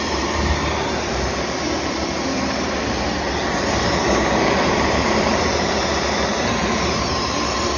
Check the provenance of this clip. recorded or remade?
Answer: remade